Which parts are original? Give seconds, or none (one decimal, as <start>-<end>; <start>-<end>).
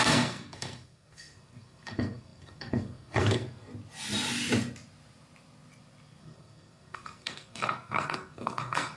3.7-6.2